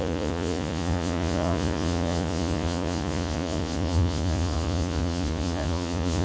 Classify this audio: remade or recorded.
remade